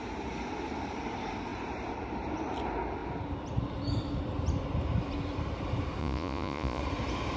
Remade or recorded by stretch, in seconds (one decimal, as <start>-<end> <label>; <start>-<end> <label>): 0.0-6.0 recorded; 6.0-6.8 remade; 6.8-7.4 recorded